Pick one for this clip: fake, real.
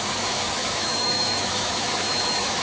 fake